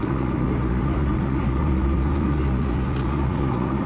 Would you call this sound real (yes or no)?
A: no